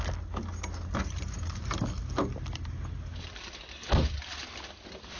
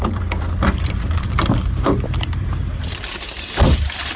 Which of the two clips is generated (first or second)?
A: second